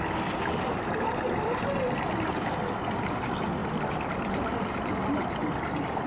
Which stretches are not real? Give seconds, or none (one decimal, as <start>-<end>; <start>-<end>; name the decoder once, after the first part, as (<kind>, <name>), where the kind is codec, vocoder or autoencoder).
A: none